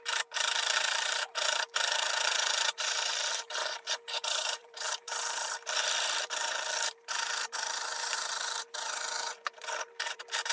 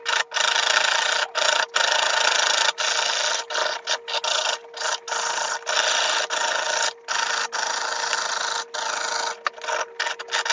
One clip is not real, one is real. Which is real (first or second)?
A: second